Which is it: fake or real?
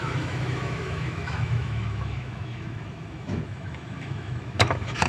fake